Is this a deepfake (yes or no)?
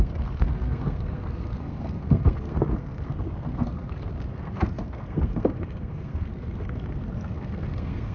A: yes